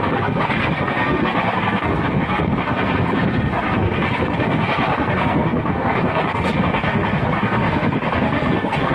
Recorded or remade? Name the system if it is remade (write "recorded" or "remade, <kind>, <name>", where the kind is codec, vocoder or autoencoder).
remade, codec, SNAC